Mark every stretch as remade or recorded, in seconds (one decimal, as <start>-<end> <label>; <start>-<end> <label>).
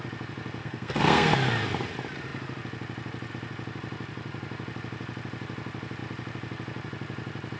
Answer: 0.0-0.6 recorded; 0.6-1.3 remade; 1.3-7.6 recorded